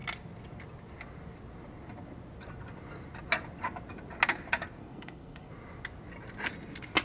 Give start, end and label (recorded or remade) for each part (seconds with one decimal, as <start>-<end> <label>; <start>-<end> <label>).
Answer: 0.0-4.8 recorded; 4.8-5.5 remade; 5.5-7.0 recorded